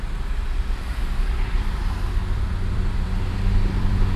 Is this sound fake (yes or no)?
yes